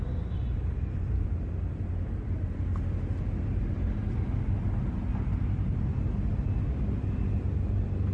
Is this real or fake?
real